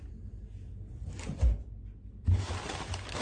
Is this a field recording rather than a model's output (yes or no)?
yes